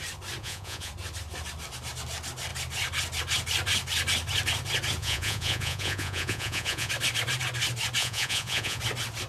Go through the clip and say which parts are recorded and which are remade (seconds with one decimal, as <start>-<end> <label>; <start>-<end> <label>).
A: 0.0-0.4 recorded; 0.4-0.9 remade; 0.9-5.0 recorded; 5.0-6.9 remade; 6.9-8.0 recorded; 8.0-8.8 remade; 8.8-9.3 recorded